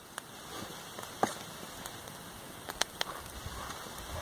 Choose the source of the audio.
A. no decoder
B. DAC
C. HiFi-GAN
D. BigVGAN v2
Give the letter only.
A